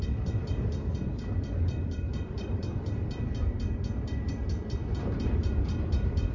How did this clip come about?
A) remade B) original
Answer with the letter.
A